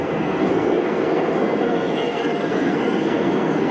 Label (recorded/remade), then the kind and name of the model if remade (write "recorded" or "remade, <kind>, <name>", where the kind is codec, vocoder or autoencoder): remade, codec, SNAC